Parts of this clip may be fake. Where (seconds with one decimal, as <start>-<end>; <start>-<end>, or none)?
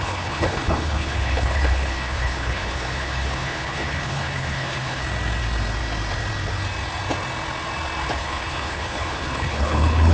0.0-5.0; 8.2-10.1